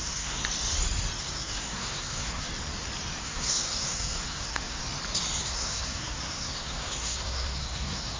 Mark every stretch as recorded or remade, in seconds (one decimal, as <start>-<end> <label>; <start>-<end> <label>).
0.0-0.4 remade; 0.4-1.2 recorded; 1.2-2.5 remade; 2.5-3.2 recorded; 3.2-4.8 remade; 4.8-5.4 recorded; 5.4-8.2 remade